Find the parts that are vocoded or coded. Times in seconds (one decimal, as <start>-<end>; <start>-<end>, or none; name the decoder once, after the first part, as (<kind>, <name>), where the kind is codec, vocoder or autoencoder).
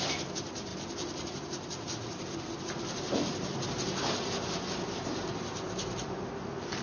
0.7-2.6 (vocoder, BigVGAN v2)